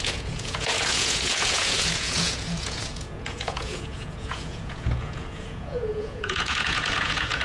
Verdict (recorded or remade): remade